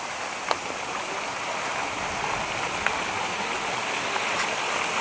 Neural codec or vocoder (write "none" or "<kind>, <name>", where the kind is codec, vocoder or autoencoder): none